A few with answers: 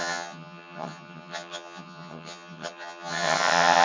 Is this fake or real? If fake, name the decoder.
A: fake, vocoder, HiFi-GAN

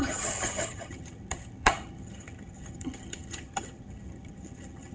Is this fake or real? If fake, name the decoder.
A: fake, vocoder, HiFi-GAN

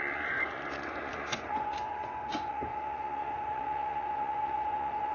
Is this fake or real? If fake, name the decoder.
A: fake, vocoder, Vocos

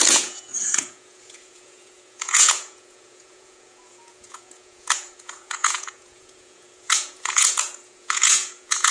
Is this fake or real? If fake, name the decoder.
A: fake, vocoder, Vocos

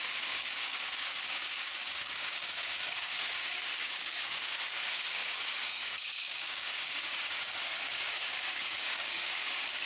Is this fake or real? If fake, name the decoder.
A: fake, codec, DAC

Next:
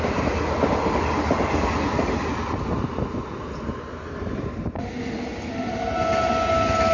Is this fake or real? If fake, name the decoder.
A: real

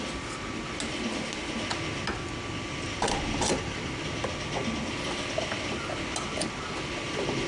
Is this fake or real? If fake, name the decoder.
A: real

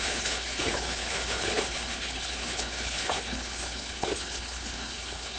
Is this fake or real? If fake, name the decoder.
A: fake, codec, HILCodec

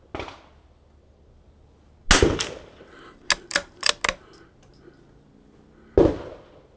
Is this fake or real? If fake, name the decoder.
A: real